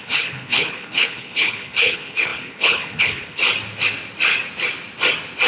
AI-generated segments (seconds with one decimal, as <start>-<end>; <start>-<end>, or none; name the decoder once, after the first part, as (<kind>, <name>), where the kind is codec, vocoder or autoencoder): 0.0-3.4 (codec, HILCodec)